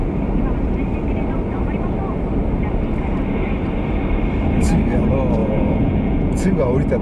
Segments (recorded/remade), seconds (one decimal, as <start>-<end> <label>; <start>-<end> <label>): 0.0-5.4 recorded; 5.4-6.5 remade; 6.5-7.0 recorded